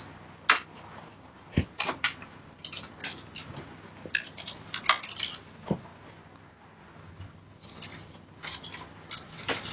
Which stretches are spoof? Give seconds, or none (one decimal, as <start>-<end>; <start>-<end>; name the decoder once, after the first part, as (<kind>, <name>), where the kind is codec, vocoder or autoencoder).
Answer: 1.1-2.9 (vocoder, BigVGAN v2)